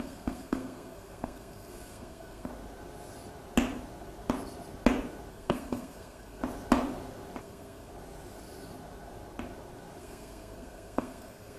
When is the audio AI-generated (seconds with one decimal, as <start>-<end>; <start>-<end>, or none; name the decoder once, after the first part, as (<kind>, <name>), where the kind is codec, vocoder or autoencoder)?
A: 0.0-2.5 (codec, SNAC); 5.3-6.4; 7.4-7.9; 10.0-11.6